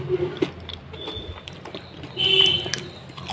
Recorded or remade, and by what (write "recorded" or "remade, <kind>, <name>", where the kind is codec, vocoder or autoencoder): recorded